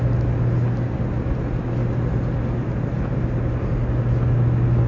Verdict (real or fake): real